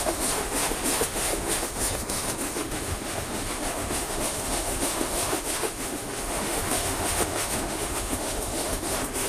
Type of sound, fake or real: fake